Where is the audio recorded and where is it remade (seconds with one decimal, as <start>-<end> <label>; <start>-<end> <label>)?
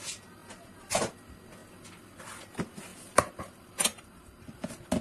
0.0-0.4 recorded; 0.4-1.1 remade; 1.1-2.9 recorded; 2.9-3.4 remade; 3.4-3.9 recorded; 3.9-4.5 remade; 4.5-5.0 recorded